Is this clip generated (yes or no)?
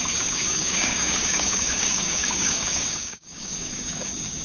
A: yes